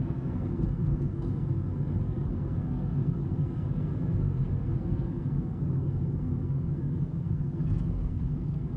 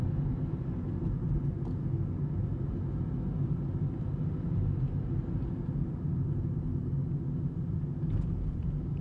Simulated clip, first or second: first